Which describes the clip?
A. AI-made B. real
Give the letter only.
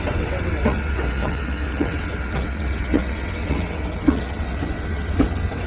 A